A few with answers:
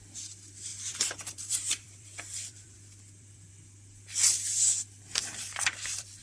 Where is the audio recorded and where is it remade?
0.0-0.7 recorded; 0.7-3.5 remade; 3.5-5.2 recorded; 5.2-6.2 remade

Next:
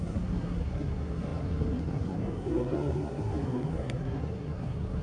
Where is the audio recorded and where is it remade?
0.0-5.0 remade

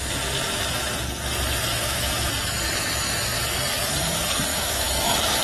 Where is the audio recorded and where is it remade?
0.0-1.7 recorded; 1.7-2.3 remade; 2.3-4.5 recorded; 4.5-5.4 remade

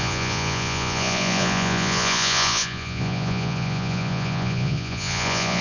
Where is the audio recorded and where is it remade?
0.0-5.6 remade

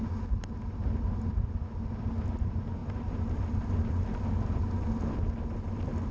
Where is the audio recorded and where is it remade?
0.0-2.8 recorded; 2.8-3.4 remade; 3.4-6.1 recorded

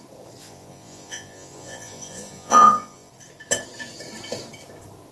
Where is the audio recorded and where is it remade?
0.0-0.4 recorded; 0.4-3.1 remade; 3.1-5.1 recorded

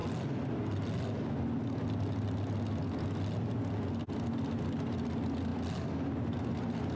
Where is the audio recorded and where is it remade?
0.0-7.0 recorded